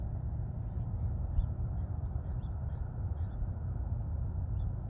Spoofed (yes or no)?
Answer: no